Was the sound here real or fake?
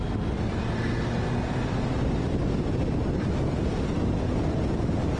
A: real